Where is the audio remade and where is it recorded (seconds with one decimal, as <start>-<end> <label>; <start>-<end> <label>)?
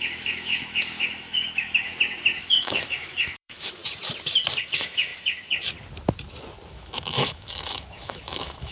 0.0-1.9 remade; 1.9-2.4 recorded; 2.4-3.8 remade; 3.8-4.6 recorded; 4.6-5.1 remade; 5.1-6.7 recorded; 6.7-8.7 remade